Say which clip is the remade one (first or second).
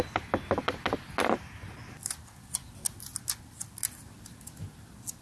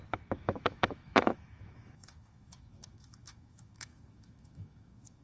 second